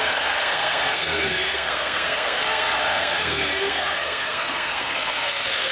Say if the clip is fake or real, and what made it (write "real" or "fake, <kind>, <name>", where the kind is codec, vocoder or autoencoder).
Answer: fake, codec, SNAC